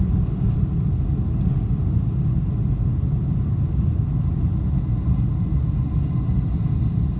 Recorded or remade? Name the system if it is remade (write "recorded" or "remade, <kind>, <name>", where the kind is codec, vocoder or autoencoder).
recorded